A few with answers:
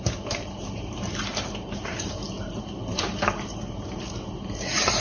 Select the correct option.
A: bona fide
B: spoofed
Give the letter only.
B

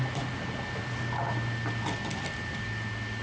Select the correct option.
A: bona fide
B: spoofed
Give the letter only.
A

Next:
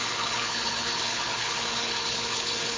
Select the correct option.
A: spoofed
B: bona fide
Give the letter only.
A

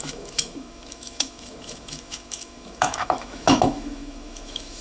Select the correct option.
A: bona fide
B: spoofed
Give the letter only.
B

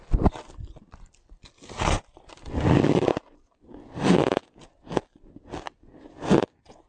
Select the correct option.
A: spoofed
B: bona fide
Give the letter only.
B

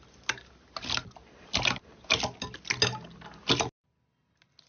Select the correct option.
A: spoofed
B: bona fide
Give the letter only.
B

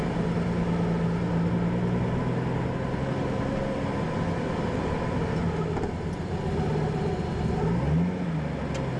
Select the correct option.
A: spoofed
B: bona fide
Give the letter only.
B